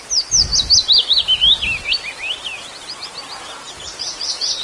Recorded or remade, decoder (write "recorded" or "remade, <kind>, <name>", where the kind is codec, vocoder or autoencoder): recorded